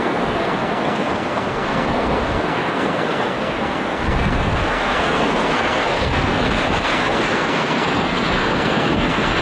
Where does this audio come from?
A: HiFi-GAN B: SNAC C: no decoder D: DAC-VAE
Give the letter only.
B